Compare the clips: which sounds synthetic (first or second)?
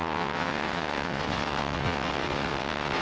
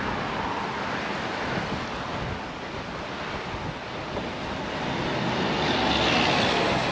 first